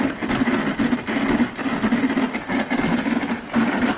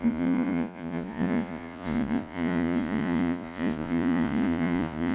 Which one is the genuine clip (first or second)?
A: first